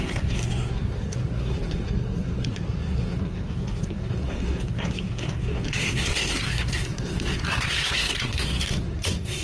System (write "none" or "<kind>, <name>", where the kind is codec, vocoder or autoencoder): codec, SNAC